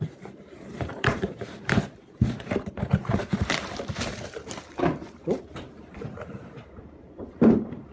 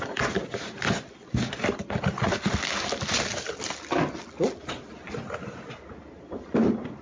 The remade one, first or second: first